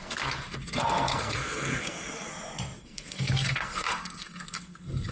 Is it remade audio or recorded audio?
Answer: remade